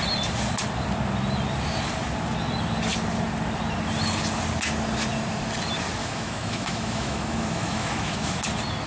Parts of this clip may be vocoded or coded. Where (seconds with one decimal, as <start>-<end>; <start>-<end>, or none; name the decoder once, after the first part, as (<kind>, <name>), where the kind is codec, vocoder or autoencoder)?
6.0-8.4 (autoencoder, DAC-VAE)